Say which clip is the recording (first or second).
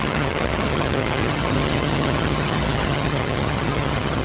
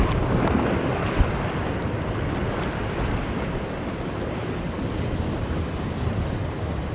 second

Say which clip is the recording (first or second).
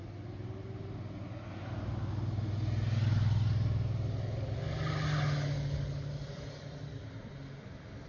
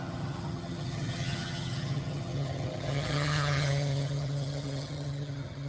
first